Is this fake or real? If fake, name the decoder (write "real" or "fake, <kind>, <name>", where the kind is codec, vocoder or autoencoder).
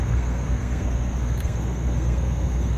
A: fake, codec, SNAC